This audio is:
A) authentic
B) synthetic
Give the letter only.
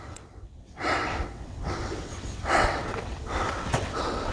B